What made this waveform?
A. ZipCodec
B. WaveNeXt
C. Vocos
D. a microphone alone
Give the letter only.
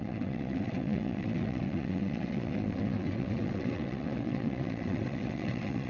B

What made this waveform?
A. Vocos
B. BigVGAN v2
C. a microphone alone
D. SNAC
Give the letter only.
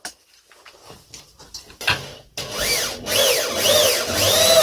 C